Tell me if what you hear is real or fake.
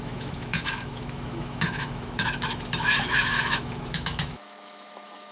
fake